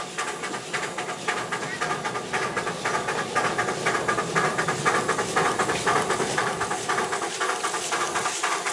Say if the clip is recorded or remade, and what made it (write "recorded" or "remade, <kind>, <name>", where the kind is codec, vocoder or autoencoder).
recorded